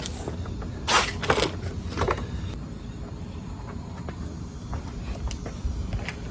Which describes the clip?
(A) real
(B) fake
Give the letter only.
A